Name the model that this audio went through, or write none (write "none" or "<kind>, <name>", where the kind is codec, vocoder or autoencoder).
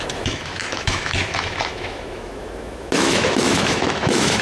autoencoder, DAC-VAE